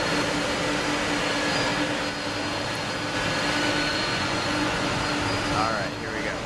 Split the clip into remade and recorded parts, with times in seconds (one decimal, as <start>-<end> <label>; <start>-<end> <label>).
0.0-3.9 recorded; 3.9-5.1 remade; 5.1-6.5 recorded